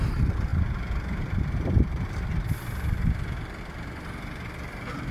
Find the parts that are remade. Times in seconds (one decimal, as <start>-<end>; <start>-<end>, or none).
none